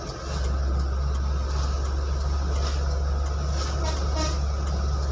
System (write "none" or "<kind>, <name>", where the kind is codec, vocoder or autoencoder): none